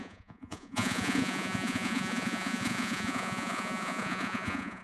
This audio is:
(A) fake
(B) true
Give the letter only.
A